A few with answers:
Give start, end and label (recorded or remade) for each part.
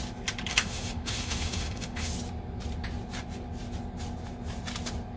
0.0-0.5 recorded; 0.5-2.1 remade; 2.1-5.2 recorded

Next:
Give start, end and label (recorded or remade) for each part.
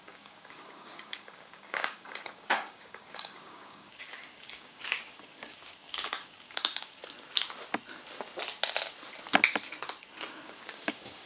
0.0-7.0 remade; 7.0-10.3 recorded; 10.3-11.3 remade